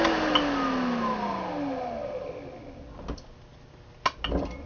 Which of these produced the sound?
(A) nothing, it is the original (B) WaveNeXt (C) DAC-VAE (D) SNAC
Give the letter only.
A